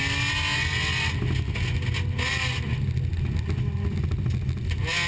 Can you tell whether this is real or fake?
real